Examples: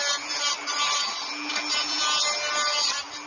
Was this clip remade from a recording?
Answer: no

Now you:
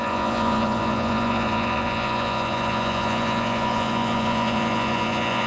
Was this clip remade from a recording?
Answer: yes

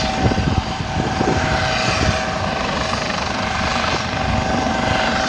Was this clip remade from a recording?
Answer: no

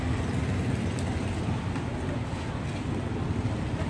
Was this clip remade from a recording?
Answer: no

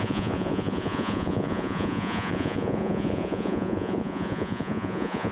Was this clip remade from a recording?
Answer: yes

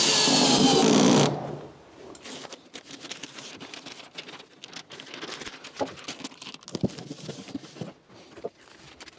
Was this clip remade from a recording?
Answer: no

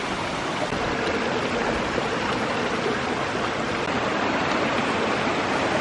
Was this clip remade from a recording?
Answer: no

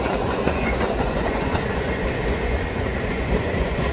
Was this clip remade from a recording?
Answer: yes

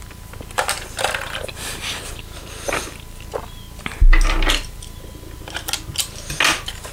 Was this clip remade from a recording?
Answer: no